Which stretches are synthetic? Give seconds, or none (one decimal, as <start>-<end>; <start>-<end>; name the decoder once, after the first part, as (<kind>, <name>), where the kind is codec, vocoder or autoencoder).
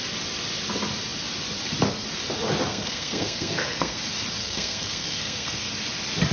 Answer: 2.7-4.0 (codec, SNAC); 4.4-5.7